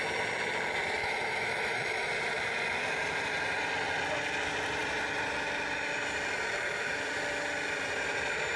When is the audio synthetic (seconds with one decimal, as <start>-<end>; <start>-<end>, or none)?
1.0-2.1